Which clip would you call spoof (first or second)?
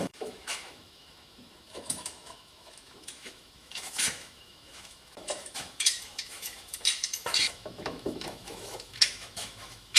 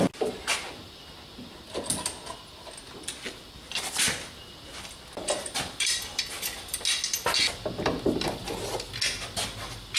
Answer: first